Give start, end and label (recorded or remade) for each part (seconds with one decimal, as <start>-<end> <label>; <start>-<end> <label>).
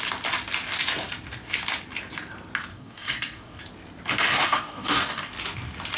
0.0-2.7 recorded; 2.7-3.6 remade; 3.6-4.3 recorded; 4.3-5.3 remade; 5.3-6.0 recorded